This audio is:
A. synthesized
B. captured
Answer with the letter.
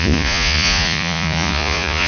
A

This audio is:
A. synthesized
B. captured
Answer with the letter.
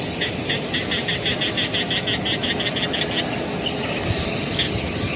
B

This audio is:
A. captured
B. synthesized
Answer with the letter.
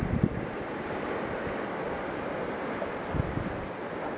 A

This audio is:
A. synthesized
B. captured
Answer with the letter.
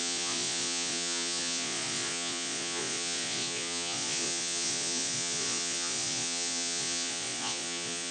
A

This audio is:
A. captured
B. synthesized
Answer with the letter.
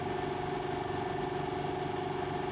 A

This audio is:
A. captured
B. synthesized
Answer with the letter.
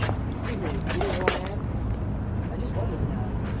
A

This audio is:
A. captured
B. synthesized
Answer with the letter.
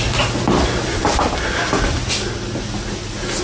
A